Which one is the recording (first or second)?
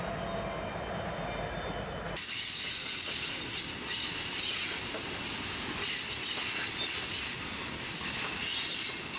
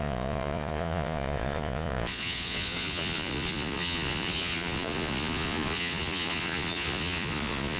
first